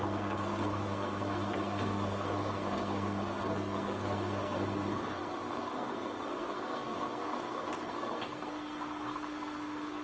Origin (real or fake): fake